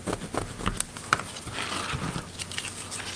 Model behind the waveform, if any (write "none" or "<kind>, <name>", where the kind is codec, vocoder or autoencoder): none